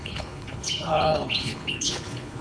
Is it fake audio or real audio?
fake